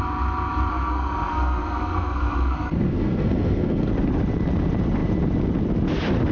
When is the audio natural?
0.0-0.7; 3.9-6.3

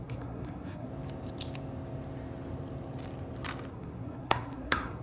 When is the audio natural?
0.9-3.7

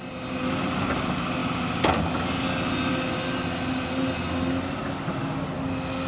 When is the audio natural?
0.0-6.1

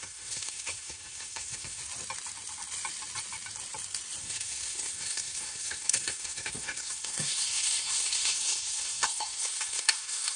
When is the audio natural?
1.8-4.2

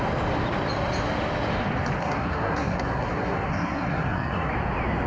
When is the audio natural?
0.0-2.0; 4.5-5.1

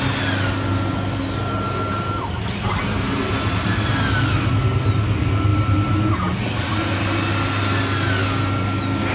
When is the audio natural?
0.0-9.1

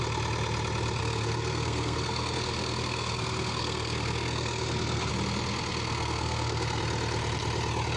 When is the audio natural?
0.0-1.0; 5.1-5.7; 6.8-8.0